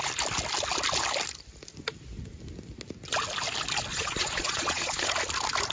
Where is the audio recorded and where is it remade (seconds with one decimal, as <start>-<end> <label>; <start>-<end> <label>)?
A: 0.0-3.9 recorded; 3.9-5.1 remade; 5.1-5.7 recorded